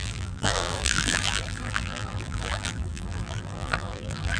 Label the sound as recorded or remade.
remade